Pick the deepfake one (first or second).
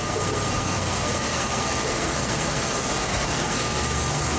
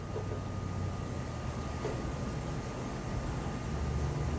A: first